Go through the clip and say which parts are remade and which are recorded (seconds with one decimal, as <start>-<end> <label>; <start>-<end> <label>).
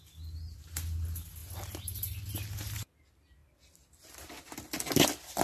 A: 0.0-5.4 recorded